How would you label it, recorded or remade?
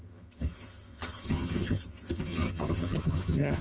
remade